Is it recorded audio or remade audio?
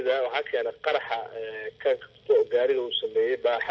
recorded